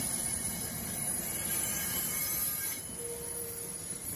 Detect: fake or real fake